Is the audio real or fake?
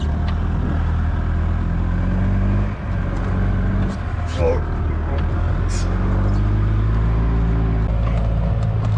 real